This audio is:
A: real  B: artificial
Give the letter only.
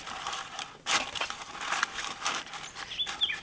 A